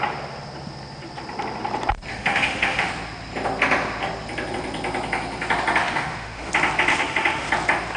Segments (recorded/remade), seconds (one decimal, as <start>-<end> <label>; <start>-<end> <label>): 0.0-2.1 recorded; 2.1-2.9 remade; 2.9-5.8 recorded; 5.8-6.5 remade; 6.5-6.9 recorded; 6.9-7.5 remade; 7.5-8.0 recorded